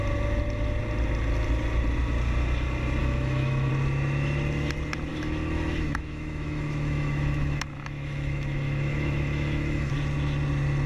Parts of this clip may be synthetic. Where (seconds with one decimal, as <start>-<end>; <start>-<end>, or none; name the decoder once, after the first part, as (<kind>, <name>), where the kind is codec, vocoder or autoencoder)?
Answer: 3.0-3.7 (autoencoder, DAC-VAE); 5.1-9.9